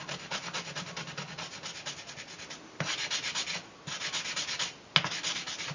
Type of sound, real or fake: real